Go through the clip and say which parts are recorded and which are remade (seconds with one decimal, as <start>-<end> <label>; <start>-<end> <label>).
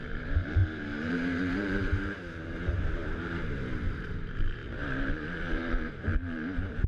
0.0-6.9 remade